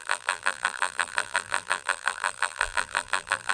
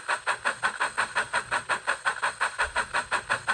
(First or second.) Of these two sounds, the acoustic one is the second